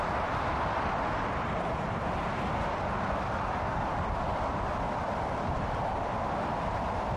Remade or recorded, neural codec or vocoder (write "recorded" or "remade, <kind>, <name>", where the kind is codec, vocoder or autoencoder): recorded